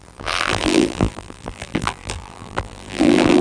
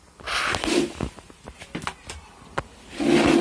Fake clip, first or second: first